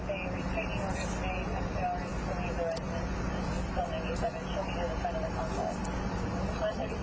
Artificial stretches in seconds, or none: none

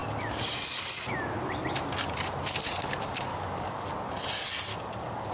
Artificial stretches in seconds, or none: 3.3-3.9 (codec, DAC); 4.7-5.3

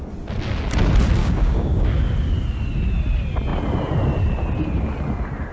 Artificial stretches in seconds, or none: 1.2-1.9 (codec, DAC)

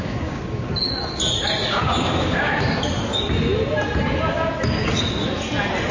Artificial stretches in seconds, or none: 0.0-0.7 (codec, DAC); 1.6-2.5